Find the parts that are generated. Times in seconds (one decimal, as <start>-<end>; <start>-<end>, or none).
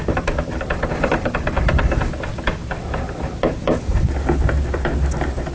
none